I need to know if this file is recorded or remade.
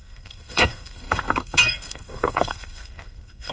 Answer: remade